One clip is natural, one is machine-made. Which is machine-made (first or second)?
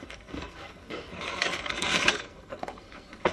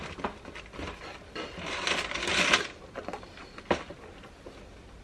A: first